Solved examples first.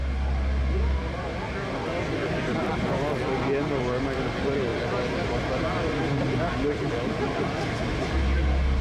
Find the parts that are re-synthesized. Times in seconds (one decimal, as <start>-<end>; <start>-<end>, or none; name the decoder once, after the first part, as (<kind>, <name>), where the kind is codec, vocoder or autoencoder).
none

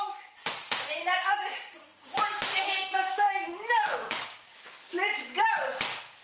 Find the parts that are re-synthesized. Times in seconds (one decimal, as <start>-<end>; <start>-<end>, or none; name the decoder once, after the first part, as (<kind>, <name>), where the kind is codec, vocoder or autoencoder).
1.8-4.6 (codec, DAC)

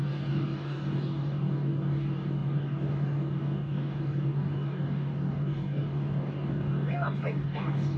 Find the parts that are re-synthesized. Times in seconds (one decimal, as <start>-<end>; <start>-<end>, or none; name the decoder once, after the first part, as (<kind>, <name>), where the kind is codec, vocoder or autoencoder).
0.0-8.0 (codec, DAC)

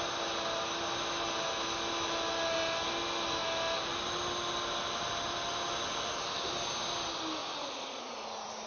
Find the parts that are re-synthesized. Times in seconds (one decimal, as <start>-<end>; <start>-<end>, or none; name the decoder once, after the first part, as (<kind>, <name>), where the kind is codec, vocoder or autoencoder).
7.4-8.7 (vocoder, Vocos)

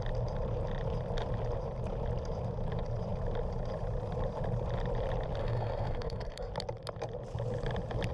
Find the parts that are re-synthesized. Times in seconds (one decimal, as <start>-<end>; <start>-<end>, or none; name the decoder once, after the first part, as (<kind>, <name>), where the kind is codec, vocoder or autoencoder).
5.4-6.5 (codec, SNAC)

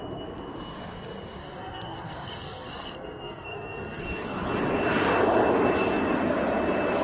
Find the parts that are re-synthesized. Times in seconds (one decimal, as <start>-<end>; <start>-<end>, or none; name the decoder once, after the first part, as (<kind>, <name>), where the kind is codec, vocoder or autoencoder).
1.4-4.0 (codec, SNAC)